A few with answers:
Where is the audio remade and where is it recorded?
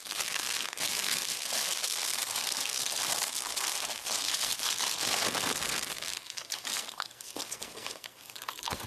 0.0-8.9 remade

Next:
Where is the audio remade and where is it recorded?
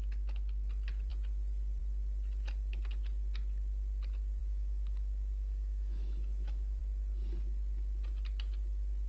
0.0-4.4 recorded; 4.4-6.8 remade; 6.8-9.1 recorded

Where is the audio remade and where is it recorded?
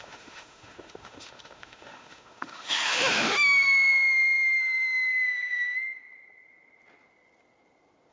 0.0-5.1 remade; 5.1-8.1 recorded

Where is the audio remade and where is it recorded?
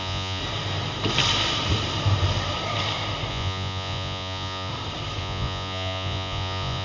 0.0-0.4 remade; 0.4-3.3 recorded; 3.3-4.7 remade; 4.7-5.2 recorded; 5.2-6.8 remade